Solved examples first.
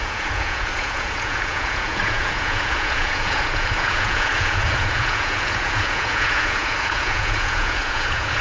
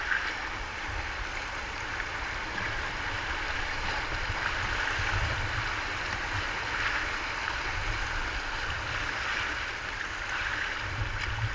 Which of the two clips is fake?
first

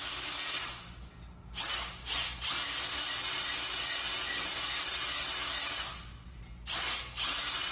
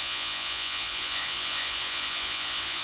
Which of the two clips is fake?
second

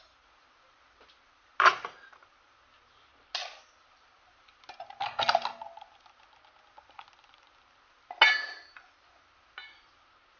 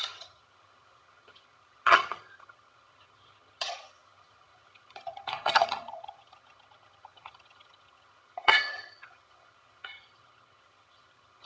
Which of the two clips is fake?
second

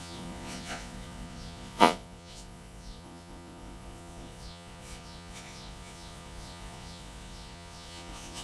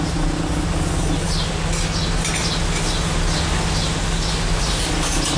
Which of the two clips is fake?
first